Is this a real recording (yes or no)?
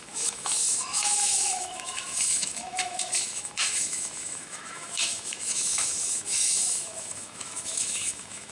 no